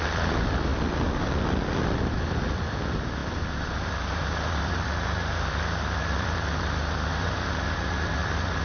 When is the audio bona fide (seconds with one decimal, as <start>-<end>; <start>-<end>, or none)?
0.7-1.8